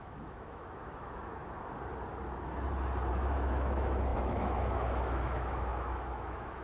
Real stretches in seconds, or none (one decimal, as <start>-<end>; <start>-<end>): 1.4-3.1

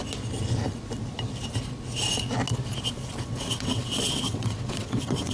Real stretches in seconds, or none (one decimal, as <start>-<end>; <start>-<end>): 0.0-3.2